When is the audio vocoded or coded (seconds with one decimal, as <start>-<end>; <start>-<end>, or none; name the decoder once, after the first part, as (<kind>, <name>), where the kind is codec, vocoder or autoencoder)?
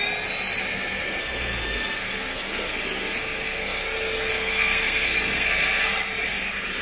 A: 1.2-3.8 (codec, SNAC); 4.3-5.9